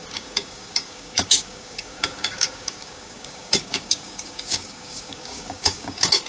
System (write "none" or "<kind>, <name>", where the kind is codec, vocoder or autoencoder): codec, DAC